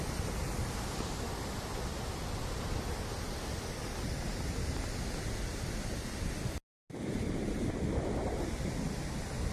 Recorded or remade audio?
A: recorded